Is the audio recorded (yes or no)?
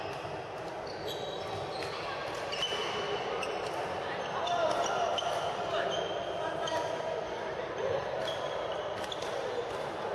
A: yes